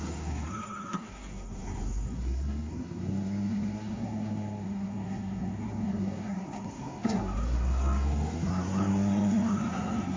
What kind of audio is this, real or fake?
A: fake